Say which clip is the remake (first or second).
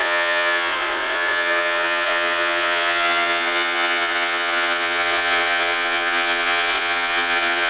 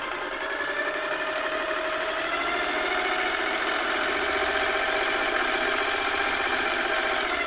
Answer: first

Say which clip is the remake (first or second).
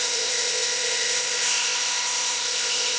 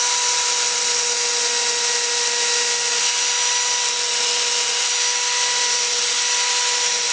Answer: first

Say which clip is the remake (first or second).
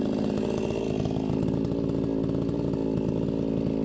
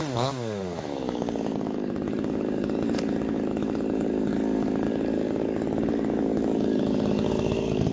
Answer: second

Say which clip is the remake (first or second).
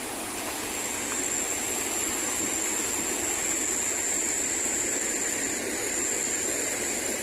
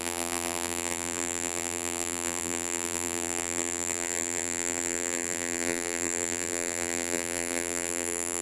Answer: second